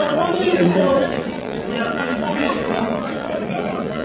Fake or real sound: fake